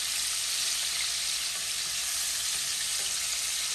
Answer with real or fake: real